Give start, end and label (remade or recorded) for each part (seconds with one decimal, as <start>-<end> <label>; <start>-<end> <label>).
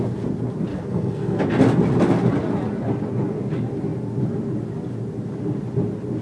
0.0-0.7 recorded; 0.7-1.4 remade; 1.4-6.2 recorded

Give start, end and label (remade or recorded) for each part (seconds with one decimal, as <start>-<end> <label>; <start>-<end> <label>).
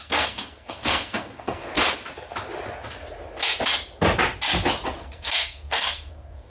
0.0-1.7 remade; 1.7-5.0 recorded; 5.0-6.5 remade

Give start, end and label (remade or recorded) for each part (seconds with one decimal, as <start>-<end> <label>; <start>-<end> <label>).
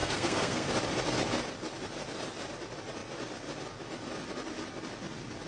0.0-0.7 remade; 0.7-5.5 recorded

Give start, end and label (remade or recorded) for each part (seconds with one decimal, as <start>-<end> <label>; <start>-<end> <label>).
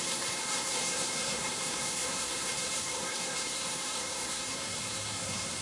0.0-5.6 remade